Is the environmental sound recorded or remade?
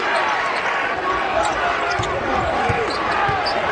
recorded